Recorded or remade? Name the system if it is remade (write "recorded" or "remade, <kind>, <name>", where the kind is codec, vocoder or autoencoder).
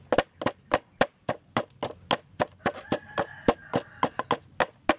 recorded